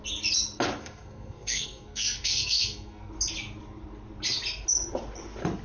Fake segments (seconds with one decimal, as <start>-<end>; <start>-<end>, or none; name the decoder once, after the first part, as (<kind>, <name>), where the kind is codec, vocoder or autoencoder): 0.8-3.1 (codec, SNAC)